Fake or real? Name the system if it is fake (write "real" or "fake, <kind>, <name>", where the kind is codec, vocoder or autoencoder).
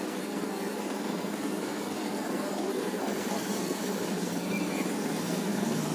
fake, codec, SNAC